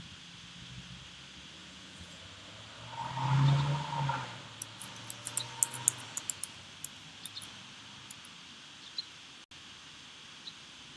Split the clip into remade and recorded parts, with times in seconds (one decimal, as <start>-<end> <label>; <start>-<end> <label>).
0.0-1.6 recorded; 1.6-2.2 remade; 2.2-11.0 recorded